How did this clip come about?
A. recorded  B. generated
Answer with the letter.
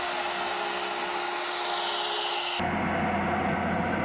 A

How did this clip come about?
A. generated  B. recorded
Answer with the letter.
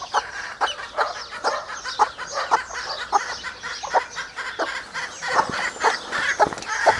B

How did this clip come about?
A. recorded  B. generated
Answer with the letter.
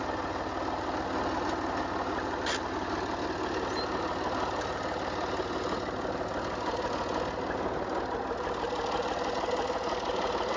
A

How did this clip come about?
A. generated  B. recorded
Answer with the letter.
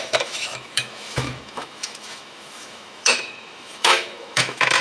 A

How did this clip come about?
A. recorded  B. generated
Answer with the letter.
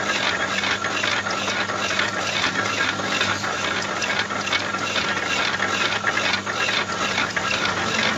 A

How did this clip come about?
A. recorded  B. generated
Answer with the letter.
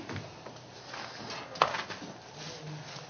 A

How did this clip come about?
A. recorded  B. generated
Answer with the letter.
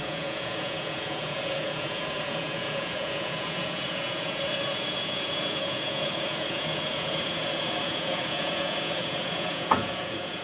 B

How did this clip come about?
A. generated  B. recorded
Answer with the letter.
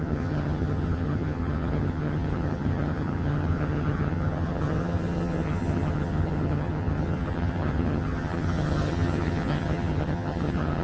A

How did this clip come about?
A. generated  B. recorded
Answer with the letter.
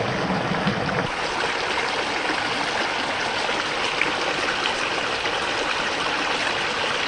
B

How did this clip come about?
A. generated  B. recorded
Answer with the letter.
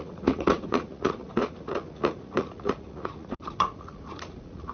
A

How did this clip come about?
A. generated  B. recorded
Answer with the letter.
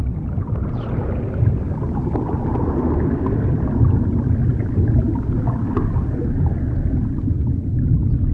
B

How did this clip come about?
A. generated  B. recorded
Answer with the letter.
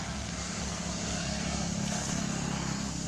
A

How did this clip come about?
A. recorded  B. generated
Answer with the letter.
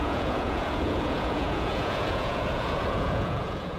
B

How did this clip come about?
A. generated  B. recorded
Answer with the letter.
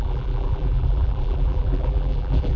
A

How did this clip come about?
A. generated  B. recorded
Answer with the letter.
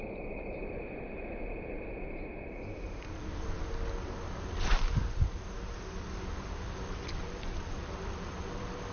A